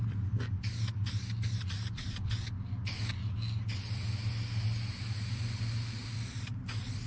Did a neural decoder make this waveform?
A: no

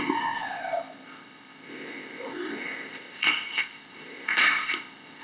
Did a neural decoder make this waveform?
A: yes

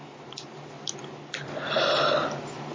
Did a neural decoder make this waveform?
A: no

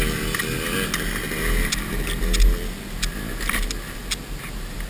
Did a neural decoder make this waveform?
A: no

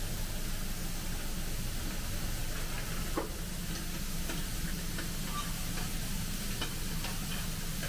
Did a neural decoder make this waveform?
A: no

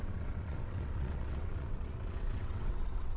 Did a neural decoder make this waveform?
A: yes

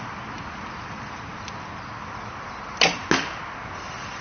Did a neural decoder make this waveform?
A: no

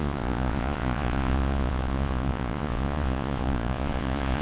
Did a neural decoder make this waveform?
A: yes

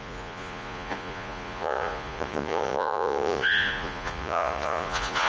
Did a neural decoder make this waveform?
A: yes